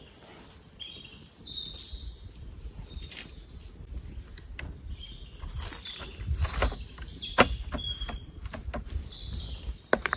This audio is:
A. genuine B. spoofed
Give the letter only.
A